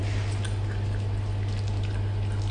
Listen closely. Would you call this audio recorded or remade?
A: recorded